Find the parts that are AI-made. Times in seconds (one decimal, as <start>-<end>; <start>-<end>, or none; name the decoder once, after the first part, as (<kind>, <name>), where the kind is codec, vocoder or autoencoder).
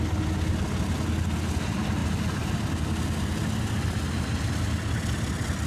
none